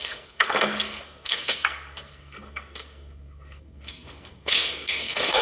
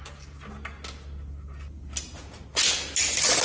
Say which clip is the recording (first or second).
second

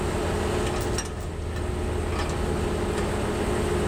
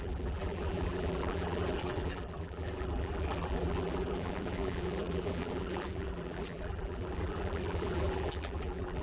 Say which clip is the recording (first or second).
first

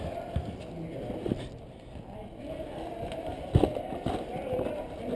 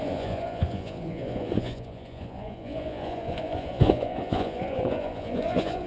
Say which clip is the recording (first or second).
first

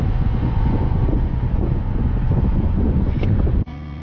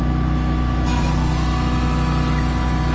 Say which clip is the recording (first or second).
second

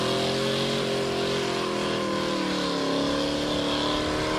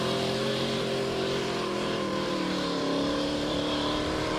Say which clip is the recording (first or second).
first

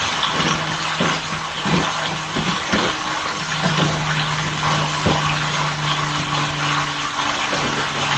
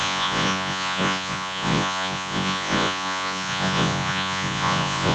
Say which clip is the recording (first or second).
first